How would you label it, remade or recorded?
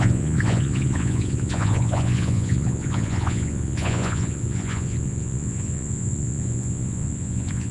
remade